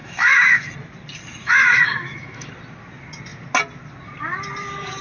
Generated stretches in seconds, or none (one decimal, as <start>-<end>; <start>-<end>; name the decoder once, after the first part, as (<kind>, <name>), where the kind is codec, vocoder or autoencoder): 0.0-0.7 (autoencoder, DAC-VAE); 1.4-2.5